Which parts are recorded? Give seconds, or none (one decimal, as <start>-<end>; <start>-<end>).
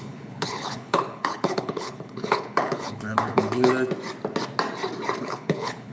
3.7-5.2